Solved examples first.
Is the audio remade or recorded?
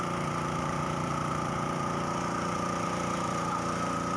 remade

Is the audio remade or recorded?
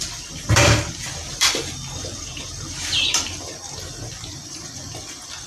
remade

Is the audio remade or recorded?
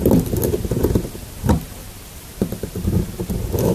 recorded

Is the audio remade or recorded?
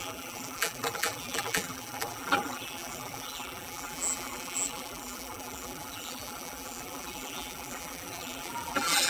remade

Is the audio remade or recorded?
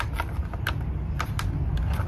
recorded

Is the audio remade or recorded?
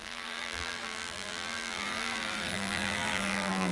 remade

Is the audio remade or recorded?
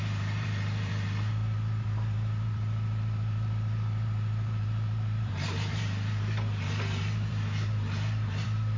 remade